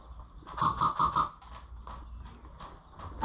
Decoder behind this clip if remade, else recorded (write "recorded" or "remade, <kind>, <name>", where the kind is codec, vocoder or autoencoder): recorded